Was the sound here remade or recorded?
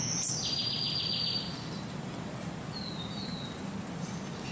recorded